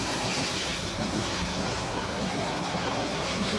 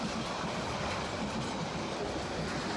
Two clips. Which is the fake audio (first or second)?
first